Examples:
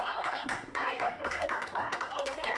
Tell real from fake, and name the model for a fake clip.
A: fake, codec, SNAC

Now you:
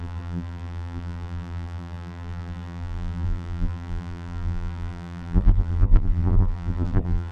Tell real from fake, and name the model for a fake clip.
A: fake, vocoder, BigVGAN v2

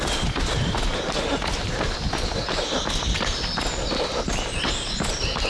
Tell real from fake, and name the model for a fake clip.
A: real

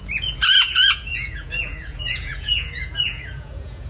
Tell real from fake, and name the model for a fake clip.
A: fake, vocoder, Vocos